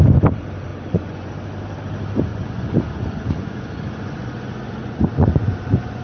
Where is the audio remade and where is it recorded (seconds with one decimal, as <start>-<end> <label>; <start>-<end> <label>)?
0.0-0.7 recorded; 0.7-1.3 remade; 1.3-2.3 recorded; 2.3-6.0 remade